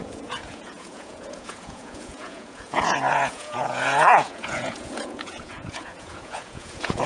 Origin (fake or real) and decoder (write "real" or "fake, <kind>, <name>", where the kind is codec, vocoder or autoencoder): fake, vocoder, Vocos